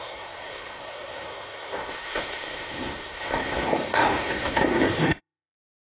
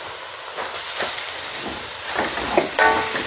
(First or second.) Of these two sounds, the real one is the second